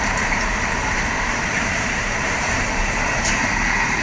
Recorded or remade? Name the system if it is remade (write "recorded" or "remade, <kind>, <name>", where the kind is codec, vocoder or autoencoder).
remade, vocoder, BigVGAN v2